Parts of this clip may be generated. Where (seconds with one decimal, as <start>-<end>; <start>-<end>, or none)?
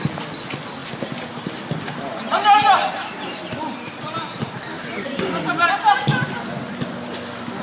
none